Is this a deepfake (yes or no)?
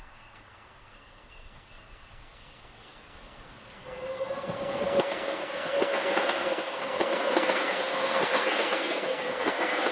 yes